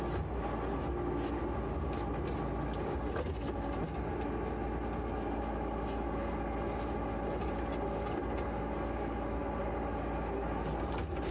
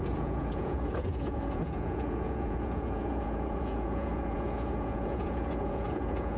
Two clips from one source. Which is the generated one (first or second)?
second